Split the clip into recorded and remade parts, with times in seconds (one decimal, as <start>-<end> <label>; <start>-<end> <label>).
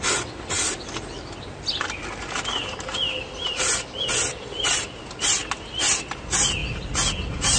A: 0.0-7.6 recorded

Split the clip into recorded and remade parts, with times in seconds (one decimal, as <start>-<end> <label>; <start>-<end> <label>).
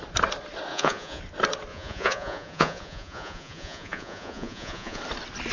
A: 0.0-0.7 recorded; 0.7-1.2 remade; 1.2-1.7 recorded; 1.7-5.0 remade; 5.0-5.5 recorded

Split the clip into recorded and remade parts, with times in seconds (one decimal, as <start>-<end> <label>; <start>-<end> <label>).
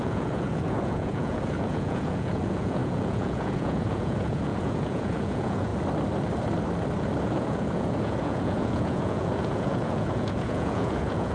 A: 0.0-5.7 remade; 5.7-7.2 recorded; 7.2-11.3 remade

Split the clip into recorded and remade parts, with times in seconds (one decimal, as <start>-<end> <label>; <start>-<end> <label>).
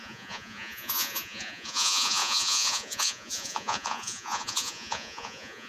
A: 0.0-5.7 remade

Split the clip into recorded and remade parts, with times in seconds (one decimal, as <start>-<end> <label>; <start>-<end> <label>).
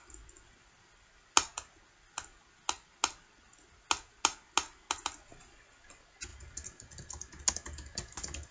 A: 0.0-8.5 recorded